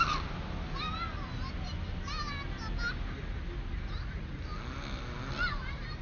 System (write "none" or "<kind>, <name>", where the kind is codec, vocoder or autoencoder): none